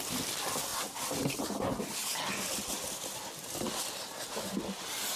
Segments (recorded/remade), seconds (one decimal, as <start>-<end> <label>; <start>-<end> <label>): 0.0-5.2 recorded